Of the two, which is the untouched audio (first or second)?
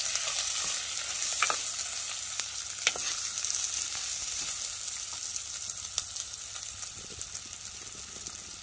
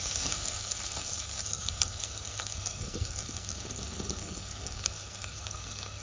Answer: first